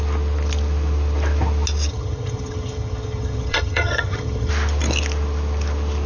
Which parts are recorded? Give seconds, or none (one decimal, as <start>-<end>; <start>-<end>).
0.0-1.9; 4.5-6.1